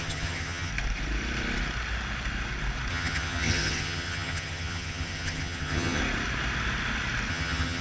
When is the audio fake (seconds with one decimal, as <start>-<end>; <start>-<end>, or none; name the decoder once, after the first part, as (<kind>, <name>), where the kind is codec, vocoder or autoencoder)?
0.0-0.7 (vocoder, HiFi-GAN); 2.9-6.0; 7.3-7.8